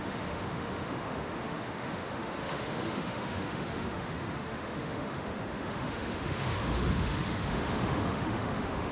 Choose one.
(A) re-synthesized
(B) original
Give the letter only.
A